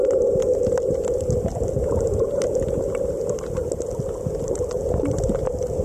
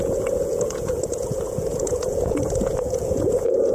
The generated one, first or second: second